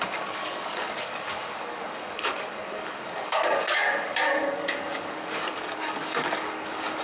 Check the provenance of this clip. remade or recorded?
remade